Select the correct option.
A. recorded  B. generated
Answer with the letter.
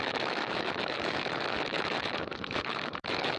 B